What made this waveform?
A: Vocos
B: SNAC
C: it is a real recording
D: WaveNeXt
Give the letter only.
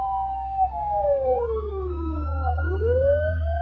B